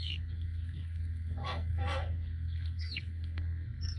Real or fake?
fake